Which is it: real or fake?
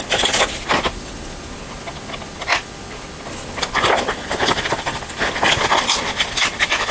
real